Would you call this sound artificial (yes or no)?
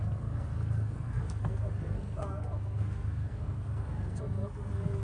yes